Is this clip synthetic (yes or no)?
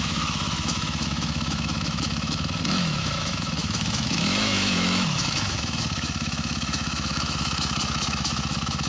yes